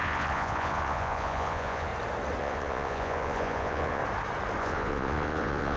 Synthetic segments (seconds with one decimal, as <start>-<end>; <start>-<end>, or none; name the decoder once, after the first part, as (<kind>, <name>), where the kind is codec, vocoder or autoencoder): 0.0-1.9 (vocoder, Vocos); 2.4-4.0; 4.6-5.8